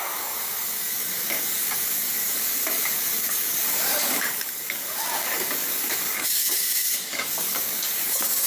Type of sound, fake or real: fake